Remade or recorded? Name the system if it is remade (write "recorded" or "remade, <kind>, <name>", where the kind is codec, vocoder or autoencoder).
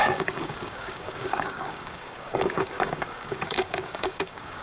remade, codec, DAC